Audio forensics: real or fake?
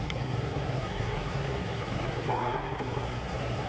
fake